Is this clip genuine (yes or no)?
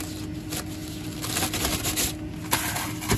yes